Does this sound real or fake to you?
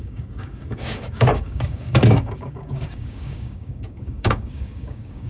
fake